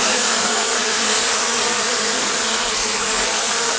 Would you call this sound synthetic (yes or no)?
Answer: yes